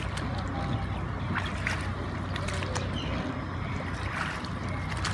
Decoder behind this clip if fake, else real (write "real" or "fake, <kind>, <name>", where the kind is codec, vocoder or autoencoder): real